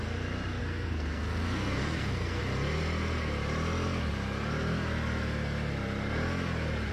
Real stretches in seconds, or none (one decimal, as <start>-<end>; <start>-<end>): 0.0-0.6; 2.4-6.9